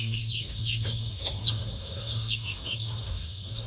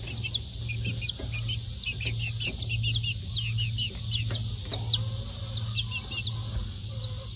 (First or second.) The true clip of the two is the second